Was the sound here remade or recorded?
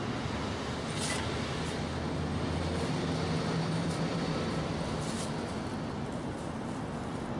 recorded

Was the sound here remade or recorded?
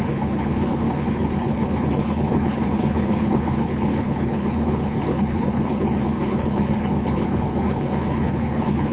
remade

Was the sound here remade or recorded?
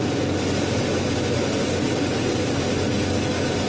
recorded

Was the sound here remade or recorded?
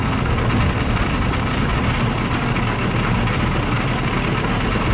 recorded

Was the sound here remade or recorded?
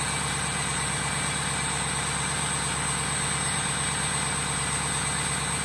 recorded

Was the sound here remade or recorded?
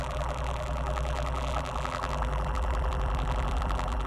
remade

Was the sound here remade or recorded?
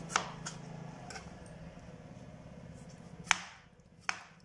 recorded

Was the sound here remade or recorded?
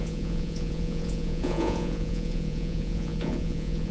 remade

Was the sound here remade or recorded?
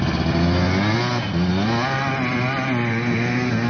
recorded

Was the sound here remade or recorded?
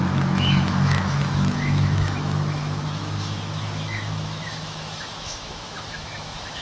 remade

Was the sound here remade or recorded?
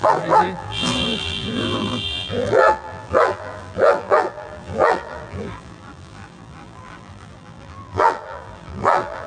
remade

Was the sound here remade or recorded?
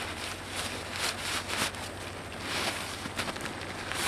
recorded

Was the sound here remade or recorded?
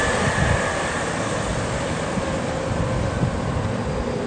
remade